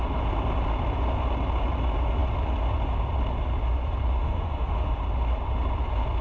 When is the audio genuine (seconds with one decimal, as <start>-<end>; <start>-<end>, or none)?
0.0-4.2; 5.0-6.2